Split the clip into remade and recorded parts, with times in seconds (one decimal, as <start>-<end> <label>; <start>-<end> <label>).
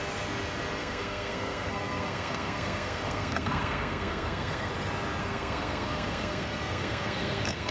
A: 0.0-0.8 recorded; 0.8-4.7 remade; 4.7-5.2 recorded; 5.2-7.7 remade